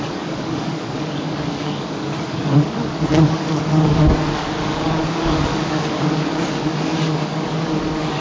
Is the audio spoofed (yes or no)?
yes